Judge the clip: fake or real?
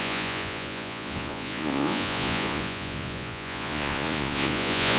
fake